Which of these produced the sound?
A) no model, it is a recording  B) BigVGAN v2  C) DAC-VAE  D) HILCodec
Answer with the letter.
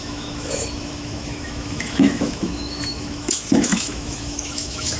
C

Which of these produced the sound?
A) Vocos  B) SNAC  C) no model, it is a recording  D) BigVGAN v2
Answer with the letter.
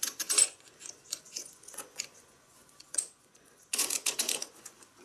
A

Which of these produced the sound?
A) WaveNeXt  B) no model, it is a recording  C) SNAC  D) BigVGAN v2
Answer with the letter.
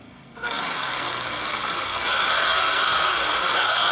C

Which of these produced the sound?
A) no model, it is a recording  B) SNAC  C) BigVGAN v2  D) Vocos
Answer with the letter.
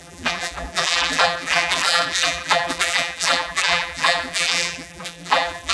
C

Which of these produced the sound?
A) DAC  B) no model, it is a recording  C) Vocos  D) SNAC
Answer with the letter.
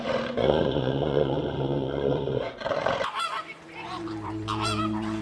C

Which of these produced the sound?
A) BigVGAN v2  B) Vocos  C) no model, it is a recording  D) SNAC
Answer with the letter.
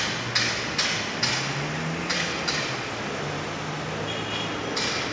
C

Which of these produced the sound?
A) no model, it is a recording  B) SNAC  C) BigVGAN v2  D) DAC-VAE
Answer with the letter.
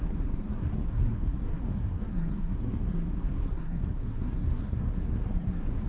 B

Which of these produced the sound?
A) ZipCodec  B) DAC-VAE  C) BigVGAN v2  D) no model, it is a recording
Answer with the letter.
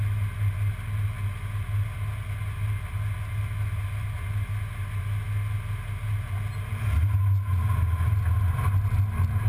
D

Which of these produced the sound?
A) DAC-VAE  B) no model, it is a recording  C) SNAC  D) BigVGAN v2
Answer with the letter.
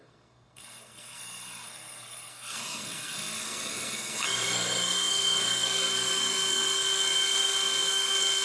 C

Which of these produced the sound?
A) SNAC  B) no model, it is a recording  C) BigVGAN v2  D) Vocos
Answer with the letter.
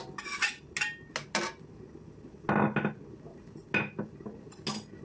B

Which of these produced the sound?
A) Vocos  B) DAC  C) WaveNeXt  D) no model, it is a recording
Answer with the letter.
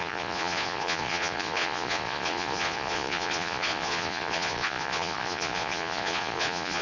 A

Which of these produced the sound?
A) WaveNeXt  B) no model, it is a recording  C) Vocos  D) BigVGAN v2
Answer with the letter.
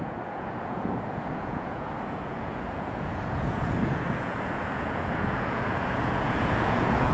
C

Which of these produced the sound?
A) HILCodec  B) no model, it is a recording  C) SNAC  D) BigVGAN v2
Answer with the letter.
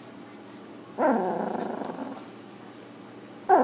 B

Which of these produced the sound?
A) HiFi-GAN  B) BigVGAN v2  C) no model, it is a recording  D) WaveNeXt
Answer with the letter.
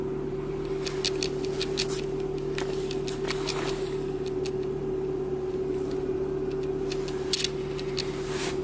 C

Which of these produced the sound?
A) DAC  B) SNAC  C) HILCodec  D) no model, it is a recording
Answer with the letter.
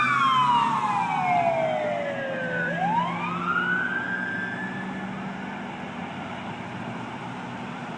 D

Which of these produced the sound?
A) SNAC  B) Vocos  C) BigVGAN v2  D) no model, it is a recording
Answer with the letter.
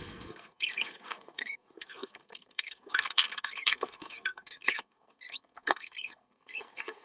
A